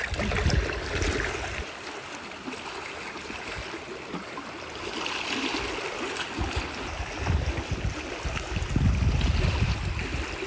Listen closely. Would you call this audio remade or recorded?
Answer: recorded